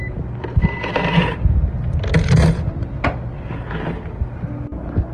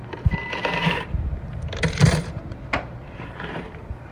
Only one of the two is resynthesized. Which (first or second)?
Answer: second